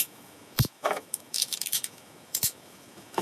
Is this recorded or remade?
remade